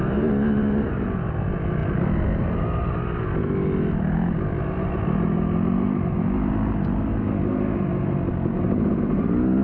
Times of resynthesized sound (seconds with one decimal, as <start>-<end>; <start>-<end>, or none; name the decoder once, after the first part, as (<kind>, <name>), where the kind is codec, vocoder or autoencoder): none